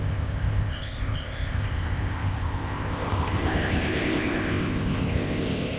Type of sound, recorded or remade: remade